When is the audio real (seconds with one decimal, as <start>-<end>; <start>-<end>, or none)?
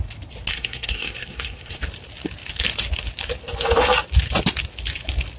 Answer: 0.0-0.5; 1.8-5.4